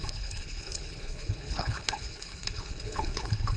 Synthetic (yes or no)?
yes